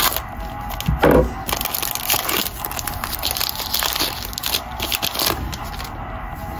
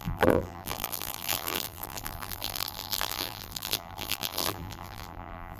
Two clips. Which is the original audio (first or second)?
first